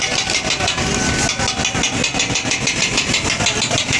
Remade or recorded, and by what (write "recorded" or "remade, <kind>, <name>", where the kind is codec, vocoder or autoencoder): recorded